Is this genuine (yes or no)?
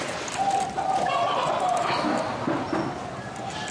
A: yes